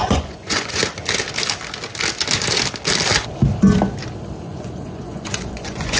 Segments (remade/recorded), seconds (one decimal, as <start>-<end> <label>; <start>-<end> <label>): 0.0-0.8 remade; 0.8-4.4 recorded; 4.4-6.0 remade